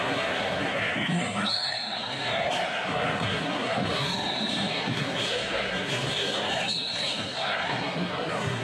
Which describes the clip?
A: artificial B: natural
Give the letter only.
A